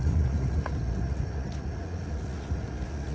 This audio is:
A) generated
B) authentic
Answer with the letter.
A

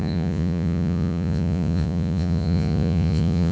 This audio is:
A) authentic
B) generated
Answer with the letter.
B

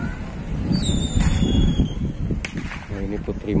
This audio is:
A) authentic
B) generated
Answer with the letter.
A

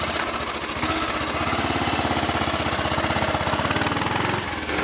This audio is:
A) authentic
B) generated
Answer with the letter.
A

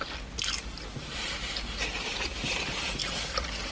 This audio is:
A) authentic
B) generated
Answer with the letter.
A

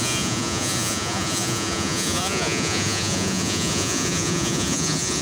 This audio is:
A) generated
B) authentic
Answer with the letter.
A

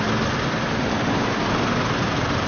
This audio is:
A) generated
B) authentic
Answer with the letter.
B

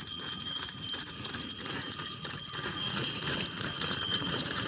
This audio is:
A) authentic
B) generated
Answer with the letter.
B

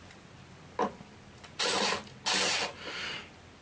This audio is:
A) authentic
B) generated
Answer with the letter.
A